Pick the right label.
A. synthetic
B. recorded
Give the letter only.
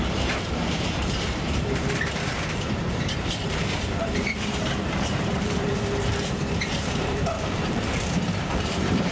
A